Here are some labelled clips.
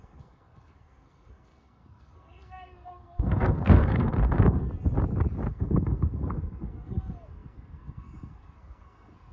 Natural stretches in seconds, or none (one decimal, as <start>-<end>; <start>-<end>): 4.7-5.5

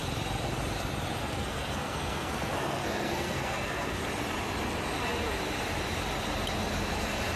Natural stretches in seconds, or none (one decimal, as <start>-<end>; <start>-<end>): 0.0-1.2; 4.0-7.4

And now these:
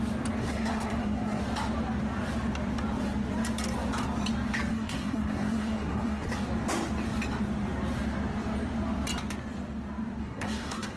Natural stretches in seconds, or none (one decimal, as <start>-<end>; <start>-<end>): 0.0-0.4; 1.4-4.7; 6.3-10.2

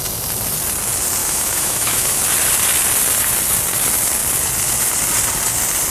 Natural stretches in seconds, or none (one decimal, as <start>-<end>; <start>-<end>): 0.0-1.2; 2.2-5.9